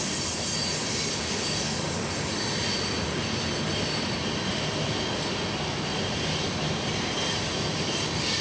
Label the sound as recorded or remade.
recorded